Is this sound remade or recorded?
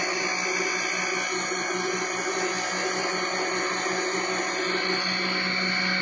recorded